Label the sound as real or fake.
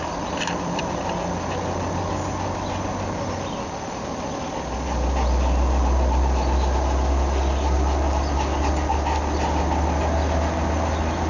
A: real